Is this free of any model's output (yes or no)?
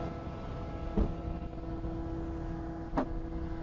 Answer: yes